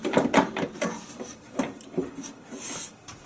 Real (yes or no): yes